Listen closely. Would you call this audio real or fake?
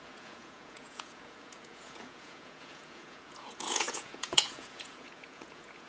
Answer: fake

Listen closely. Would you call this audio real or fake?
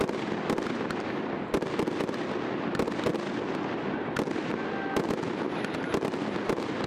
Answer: real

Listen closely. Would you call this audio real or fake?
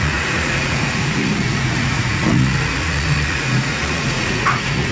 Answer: fake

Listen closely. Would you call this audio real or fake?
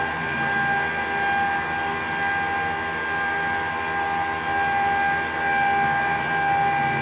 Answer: real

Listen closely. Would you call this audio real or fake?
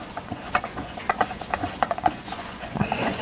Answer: fake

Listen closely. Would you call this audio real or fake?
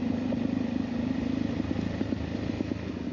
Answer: real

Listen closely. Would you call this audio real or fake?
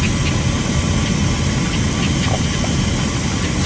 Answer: real